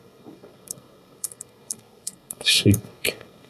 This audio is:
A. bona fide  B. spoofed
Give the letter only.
B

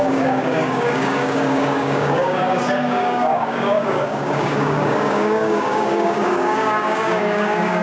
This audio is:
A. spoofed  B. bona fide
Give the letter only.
A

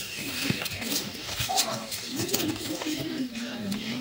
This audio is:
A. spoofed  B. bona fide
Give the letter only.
A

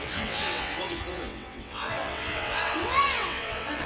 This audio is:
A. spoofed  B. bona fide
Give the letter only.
A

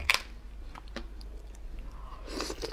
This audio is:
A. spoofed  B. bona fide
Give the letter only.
B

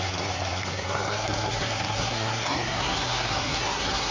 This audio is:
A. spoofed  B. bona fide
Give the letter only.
A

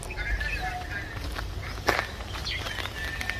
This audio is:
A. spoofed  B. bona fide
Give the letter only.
B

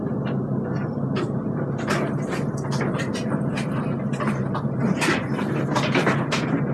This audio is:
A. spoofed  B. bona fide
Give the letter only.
A